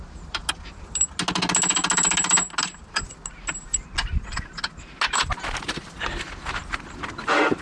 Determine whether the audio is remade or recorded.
recorded